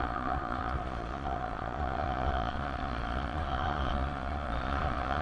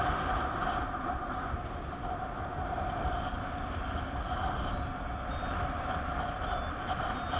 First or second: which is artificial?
first